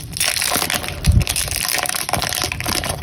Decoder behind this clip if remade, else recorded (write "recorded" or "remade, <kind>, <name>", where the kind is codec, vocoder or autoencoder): recorded